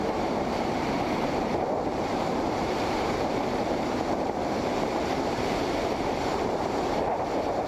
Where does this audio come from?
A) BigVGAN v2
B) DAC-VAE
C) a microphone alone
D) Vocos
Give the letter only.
A